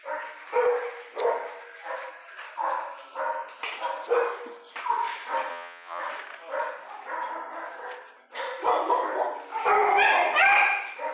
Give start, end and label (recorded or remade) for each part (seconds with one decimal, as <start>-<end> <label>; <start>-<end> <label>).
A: 0.0-5.5 recorded; 5.5-6.0 remade; 6.0-11.1 recorded

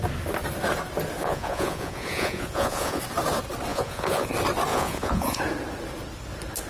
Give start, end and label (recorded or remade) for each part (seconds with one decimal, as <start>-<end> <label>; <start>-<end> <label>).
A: 0.0-1.2 recorded; 1.2-3.0 remade; 3.0-3.7 recorded; 3.7-4.3 remade; 4.3-4.7 recorded; 4.7-5.4 remade; 5.4-6.7 recorded

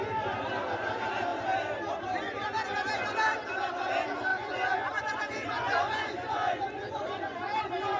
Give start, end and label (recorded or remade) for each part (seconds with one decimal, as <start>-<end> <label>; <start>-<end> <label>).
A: 0.0-4.3 recorded; 4.3-8.0 remade

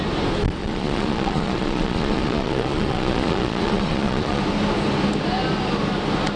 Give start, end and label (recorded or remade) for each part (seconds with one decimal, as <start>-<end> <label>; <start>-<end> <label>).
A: 0.0-0.6 recorded; 0.6-4.4 remade; 4.4-6.4 recorded

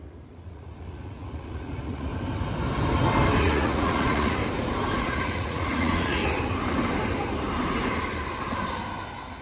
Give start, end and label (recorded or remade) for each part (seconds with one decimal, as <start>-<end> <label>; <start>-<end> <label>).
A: 0.0-2.1 remade; 2.1-3.4 recorded; 3.4-4.4 remade; 4.4-5.0 recorded; 5.0-6.2 remade; 6.2-9.4 recorded